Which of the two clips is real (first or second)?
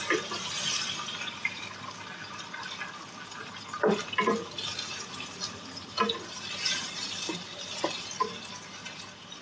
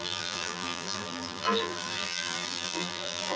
first